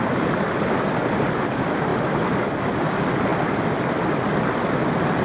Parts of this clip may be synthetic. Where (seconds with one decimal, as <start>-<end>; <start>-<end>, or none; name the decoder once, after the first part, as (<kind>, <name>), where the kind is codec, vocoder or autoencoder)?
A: none